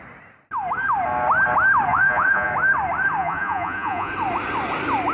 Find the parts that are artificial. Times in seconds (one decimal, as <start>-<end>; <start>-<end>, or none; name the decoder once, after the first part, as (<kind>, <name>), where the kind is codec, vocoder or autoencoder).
1.9-2.5 (vocoder, Vocos); 3.2-4.1